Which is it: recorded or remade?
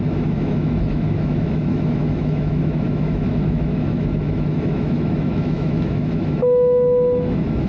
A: remade